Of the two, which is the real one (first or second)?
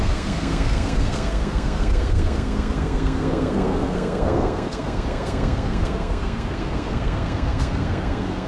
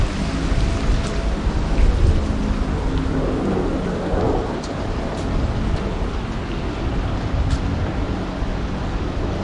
second